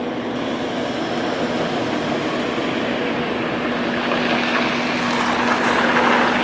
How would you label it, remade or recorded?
recorded